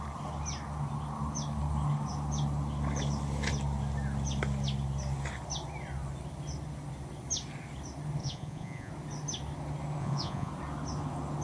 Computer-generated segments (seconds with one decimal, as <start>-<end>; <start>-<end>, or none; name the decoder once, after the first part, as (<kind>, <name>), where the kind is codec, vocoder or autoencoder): 8.2-8.9 (vocoder, Vocos); 10.0-10.5